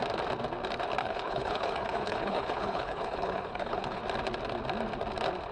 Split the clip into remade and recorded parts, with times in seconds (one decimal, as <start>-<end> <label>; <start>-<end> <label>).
0.0-1.0 recorded; 1.0-4.0 remade; 4.0-5.5 recorded